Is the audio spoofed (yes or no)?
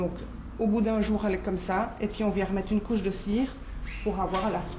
no